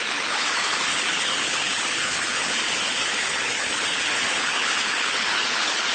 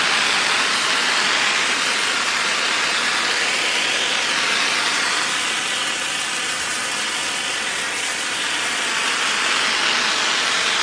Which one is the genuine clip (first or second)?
second